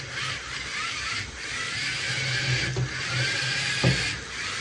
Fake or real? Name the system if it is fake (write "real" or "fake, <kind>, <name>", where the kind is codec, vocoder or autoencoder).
real